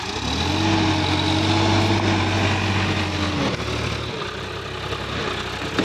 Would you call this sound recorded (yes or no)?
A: yes